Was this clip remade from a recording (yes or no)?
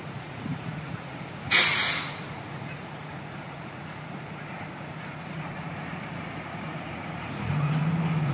yes